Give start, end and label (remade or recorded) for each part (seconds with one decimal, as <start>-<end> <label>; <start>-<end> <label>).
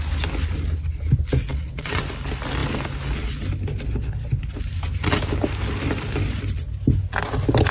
0.0-1.5 recorded; 1.5-2.0 remade; 2.0-7.7 recorded